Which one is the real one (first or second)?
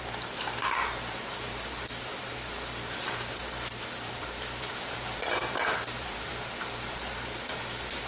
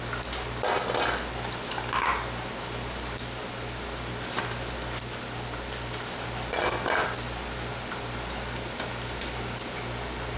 second